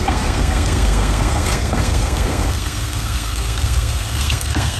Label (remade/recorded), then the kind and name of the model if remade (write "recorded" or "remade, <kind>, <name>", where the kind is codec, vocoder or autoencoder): remade, codec, SNAC